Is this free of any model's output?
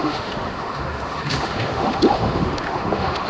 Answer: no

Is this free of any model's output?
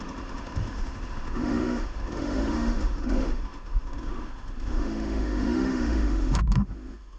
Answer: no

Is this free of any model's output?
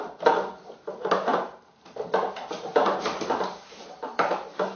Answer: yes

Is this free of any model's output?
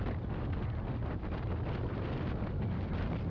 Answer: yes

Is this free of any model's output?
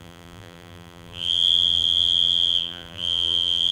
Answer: no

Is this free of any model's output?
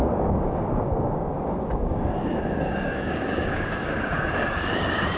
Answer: no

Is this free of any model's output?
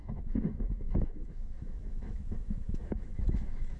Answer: no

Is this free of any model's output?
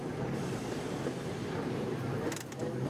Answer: yes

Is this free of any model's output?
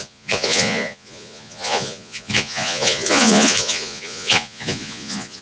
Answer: no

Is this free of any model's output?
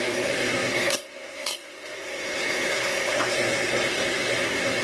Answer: no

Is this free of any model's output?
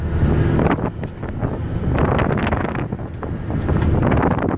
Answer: yes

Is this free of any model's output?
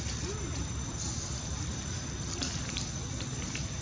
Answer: yes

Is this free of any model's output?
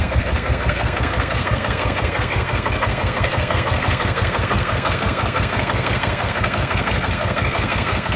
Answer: no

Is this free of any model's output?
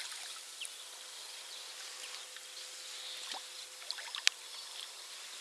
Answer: yes